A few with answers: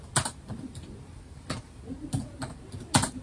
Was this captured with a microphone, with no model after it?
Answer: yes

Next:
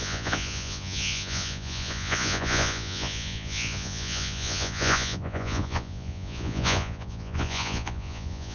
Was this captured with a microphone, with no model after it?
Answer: no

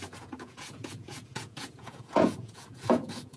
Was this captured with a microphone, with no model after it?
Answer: no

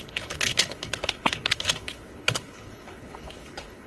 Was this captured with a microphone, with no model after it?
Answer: no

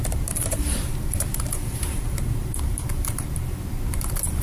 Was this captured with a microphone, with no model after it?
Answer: no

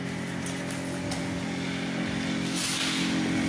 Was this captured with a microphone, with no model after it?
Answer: yes